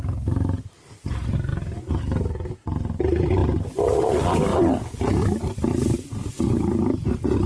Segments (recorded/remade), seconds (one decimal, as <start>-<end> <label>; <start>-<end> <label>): 0.0-7.5 recorded